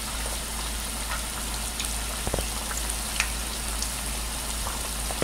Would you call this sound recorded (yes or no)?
yes